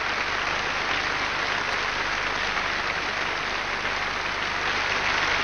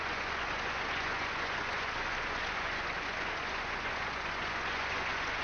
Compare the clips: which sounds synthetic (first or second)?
second